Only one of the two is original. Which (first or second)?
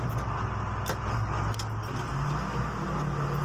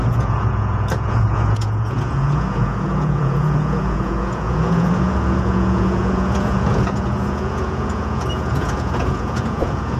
first